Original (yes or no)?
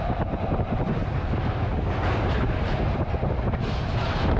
yes